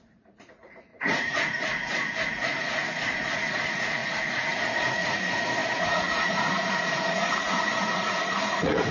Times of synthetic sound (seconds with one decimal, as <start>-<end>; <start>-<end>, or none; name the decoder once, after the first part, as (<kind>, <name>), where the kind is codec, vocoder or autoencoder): 0.0-8.9 (vocoder, Vocos)